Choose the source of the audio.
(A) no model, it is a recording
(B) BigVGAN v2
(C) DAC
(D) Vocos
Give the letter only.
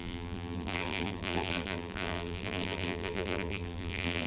B